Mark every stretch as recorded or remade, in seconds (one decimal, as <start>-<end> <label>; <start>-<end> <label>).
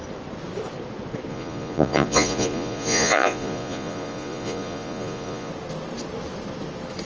0.0-1.3 recorded; 1.3-5.5 remade; 5.5-7.0 recorded